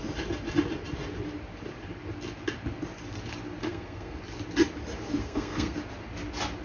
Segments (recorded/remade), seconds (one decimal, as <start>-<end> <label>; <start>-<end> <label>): 0.0-3.6 recorded; 3.6-4.2 remade; 4.2-5.2 recorded; 5.2-5.8 remade; 5.8-6.6 recorded